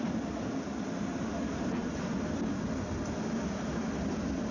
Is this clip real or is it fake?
real